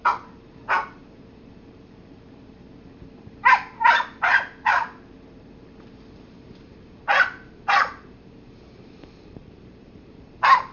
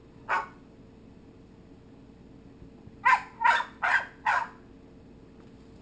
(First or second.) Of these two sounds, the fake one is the first